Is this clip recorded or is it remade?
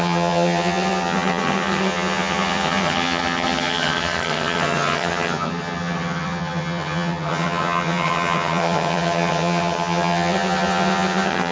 remade